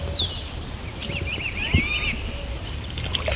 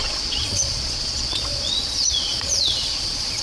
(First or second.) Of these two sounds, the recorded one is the first